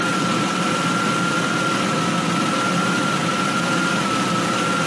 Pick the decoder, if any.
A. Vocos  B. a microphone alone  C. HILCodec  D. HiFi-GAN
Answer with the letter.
B